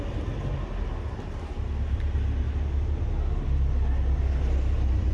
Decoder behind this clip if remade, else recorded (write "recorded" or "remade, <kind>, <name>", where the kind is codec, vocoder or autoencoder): recorded